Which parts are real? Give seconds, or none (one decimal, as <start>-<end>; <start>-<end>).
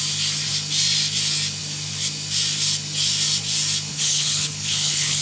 0.0-3.9